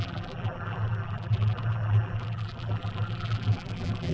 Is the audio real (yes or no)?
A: no